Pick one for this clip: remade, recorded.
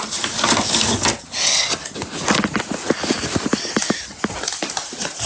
recorded